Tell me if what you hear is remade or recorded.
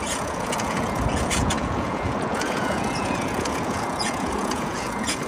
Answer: remade